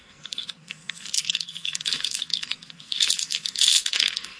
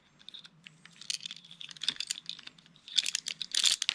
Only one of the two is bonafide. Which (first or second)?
second